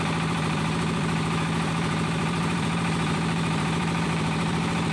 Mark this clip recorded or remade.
remade